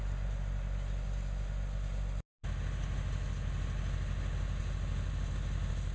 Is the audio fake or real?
real